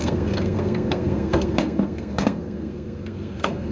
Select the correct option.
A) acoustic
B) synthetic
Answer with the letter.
B